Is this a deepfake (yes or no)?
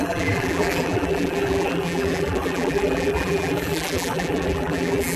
yes